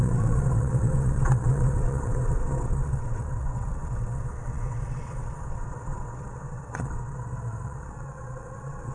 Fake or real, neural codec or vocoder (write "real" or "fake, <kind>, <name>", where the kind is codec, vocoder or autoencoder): fake, vocoder, WaveNeXt